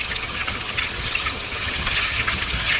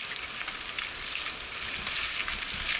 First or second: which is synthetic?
first